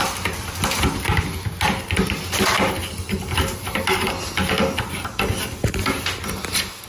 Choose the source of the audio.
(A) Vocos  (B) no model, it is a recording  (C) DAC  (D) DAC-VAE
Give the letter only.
B